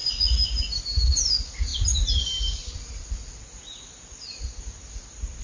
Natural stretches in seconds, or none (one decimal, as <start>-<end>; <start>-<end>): 0.0-5.4